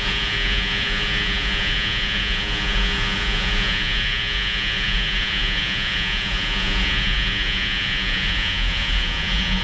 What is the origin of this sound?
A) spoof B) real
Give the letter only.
A